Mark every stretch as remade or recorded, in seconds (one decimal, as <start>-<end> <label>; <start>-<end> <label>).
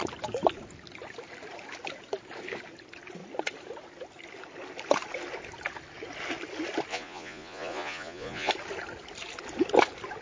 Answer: 0.0-6.9 recorded; 6.9-8.5 remade; 8.5-10.2 recorded